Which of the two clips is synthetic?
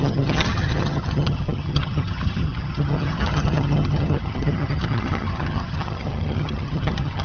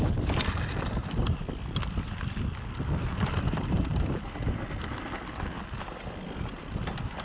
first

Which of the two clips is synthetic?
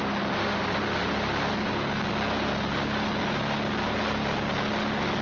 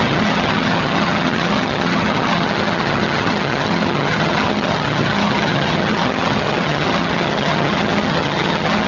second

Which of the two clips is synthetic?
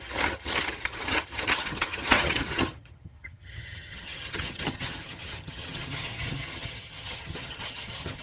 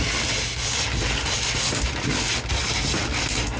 first